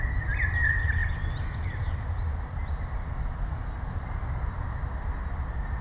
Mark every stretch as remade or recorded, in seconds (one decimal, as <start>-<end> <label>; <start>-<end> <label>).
0.0-5.8 recorded